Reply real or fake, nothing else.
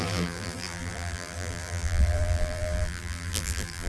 fake